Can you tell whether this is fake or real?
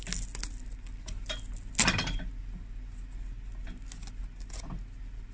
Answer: real